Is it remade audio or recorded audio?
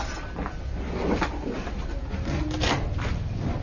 recorded